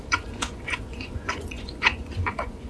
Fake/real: fake